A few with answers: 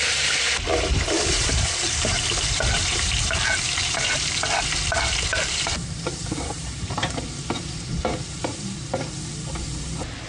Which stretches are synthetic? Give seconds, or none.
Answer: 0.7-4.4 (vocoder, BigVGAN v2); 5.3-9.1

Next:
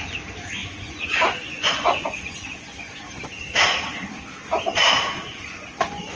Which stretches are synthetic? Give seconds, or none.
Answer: 0.6-3.2 (vocoder, Vocos); 5.3-6.2